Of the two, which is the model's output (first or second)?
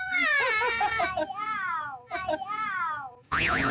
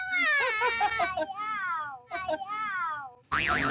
first